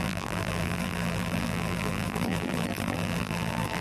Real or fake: fake